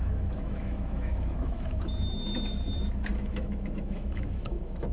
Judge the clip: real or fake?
fake